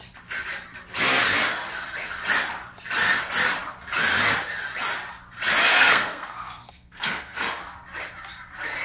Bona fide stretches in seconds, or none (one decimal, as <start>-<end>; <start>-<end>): 0.0-5.7; 7.6-8.8